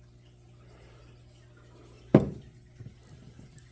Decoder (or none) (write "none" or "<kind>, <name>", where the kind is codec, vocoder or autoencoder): none